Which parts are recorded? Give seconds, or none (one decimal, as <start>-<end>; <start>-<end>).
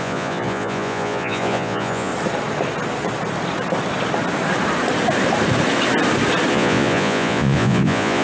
2.1-6.5